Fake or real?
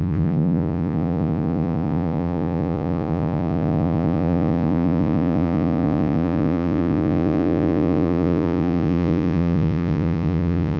fake